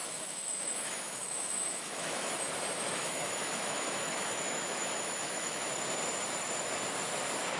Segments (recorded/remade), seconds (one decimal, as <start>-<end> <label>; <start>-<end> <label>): 0.0-2.3 remade; 2.3-3.0 recorded; 3.0-5.7 remade; 5.7-7.6 recorded